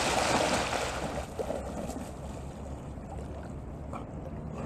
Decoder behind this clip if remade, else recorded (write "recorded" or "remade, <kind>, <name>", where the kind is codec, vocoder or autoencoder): recorded